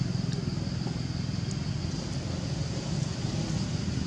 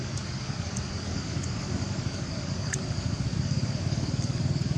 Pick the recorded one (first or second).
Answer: first